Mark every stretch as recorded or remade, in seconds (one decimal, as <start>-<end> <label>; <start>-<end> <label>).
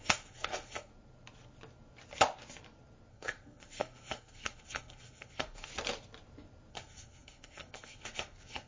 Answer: 0.0-0.9 remade; 0.9-3.1 recorded; 3.1-5.7 remade; 5.7-6.7 recorded; 6.7-8.7 remade